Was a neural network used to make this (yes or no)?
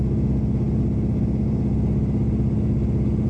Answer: no